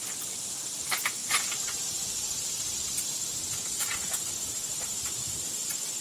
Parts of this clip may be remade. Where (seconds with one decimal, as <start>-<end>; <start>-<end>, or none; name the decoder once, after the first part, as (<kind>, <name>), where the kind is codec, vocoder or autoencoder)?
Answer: none